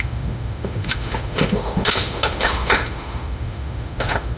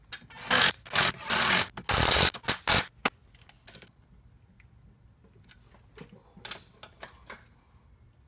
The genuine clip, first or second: second